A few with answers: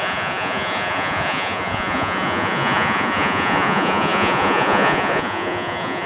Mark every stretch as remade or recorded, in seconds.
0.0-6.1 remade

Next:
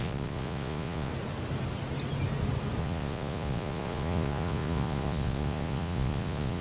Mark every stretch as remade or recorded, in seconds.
0.0-1.1 remade; 1.1-2.8 recorded; 2.8-6.6 remade

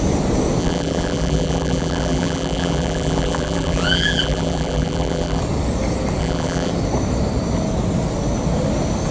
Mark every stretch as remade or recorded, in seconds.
0.0-0.6 recorded; 0.6-5.4 remade; 5.4-6.2 recorded; 6.2-6.7 remade; 6.7-9.1 recorded

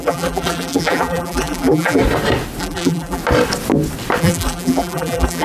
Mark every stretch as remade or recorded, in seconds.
0.0-2.0 remade; 2.0-2.6 recorded; 2.6-3.2 remade; 3.2-4.2 recorded; 4.2-5.4 remade

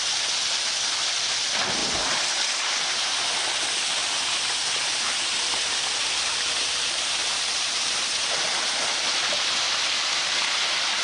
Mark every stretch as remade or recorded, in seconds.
0.0-1.8 recorded; 1.8-3.4 remade; 3.4-4.0 recorded; 4.0-5.4 remade; 5.4-6.0 recorded; 6.0-8.1 remade; 8.1-11.0 recorded

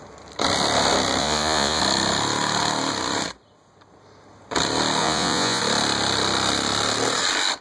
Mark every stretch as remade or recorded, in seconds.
0.0-1.2 recorded; 1.2-1.8 remade; 1.8-5.0 recorded; 5.0-5.6 remade; 5.6-7.6 recorded

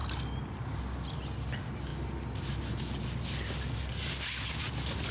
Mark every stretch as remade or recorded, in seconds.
0.0-5.1 recorded